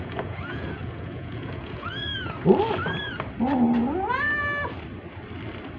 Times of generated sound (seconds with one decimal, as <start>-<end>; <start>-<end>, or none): 0.0-2.1